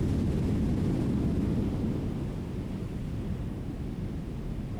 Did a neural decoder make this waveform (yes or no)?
no